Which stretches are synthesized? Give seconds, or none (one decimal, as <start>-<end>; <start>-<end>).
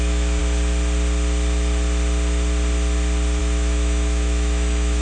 0.0-0.4; 3.4-5.0